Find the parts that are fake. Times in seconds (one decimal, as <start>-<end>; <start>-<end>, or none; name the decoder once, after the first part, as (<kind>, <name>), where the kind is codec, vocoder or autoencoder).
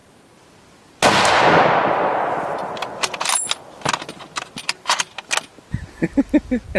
none